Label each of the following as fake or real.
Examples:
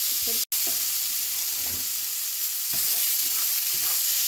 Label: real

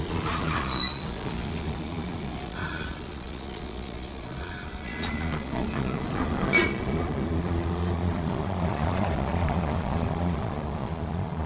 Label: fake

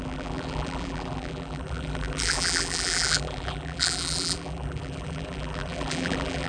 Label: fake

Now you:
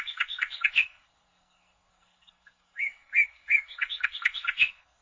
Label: fake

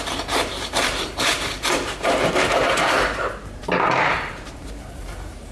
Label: fake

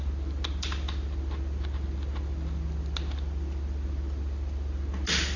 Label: real